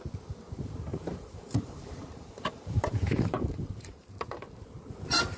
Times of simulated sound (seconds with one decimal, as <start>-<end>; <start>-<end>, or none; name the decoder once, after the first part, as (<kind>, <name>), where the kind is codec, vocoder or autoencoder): 0.9-4.1 (vocoder, BigVGAN v2)